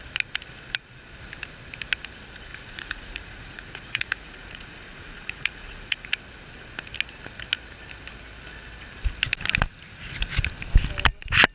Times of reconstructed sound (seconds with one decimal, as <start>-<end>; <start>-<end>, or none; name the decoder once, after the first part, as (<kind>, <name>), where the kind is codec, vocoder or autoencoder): 2.5-6.1 (vocoder, Vocos)